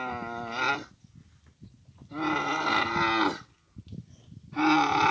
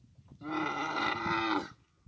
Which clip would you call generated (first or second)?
second